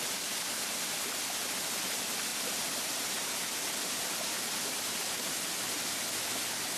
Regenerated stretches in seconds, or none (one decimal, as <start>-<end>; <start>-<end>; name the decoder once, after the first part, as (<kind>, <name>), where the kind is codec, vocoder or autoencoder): 2.3-4.1 (vocoder, BigVGAN v2)